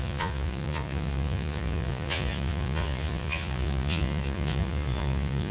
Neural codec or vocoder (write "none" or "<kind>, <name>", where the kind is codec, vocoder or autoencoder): vocoder, Vocos